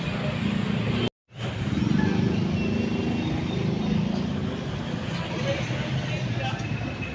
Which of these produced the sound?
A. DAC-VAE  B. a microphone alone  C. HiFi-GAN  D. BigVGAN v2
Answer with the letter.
B